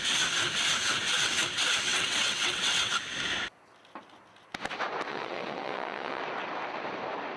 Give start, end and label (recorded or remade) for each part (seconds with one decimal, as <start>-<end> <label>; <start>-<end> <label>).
0.0-1.9 recorded; 1.9-2.9 remade; 2.9-5.1 recorded; 5.1-6.2 remade; 6.2-7.4 recorded